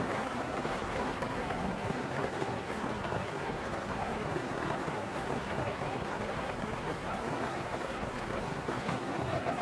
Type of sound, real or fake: fake